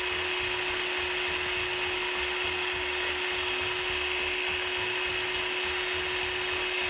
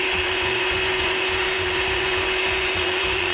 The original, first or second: first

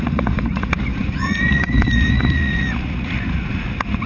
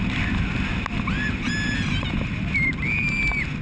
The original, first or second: second